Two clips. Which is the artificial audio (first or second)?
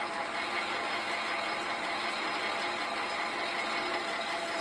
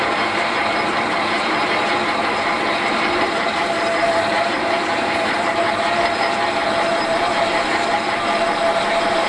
second